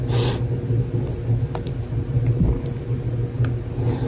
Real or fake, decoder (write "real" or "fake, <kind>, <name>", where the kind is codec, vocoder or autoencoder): real